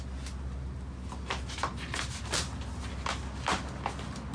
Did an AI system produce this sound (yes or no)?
no